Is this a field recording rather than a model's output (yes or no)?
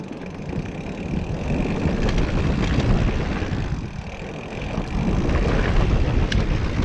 yes